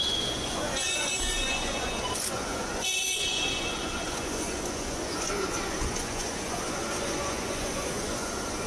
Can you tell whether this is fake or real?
fake